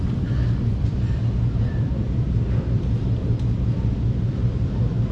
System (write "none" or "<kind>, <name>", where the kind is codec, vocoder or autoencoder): vocoder, BigVGAN v2